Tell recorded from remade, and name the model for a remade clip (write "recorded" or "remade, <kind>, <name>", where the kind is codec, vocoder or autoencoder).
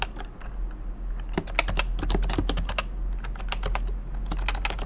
recorded